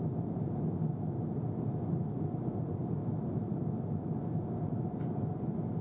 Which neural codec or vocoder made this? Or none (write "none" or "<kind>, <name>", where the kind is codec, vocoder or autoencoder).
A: none